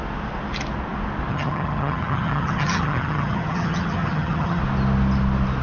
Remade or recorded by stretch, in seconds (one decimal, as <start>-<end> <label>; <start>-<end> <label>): 0.0-1.3 recorded; 1.3-4.6 remade; 4.6-5.6 recorded